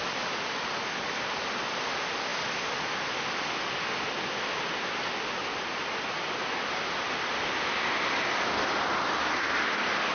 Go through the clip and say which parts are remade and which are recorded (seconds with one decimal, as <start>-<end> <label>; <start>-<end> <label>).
0.0-10.1 recorded